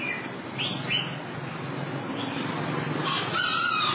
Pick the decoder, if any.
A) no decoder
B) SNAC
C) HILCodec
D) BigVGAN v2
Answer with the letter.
A